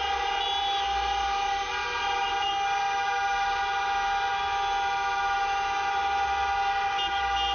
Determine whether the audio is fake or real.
real